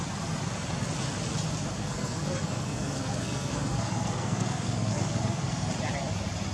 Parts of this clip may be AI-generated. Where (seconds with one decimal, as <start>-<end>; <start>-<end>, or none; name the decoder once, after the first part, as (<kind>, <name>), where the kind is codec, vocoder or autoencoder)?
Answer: 1.8-5.7 (codec, SNAC)